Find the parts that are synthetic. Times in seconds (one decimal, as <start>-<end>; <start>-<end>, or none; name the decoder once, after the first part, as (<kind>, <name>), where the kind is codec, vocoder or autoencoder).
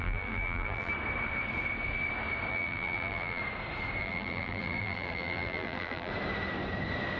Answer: 0.0-0.9 (vocoder, BigVGAN v2); 2.5-3.4; 4.0-6.1